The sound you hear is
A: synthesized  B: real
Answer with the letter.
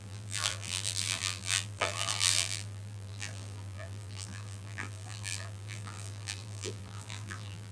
A